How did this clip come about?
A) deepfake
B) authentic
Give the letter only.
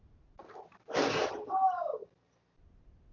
B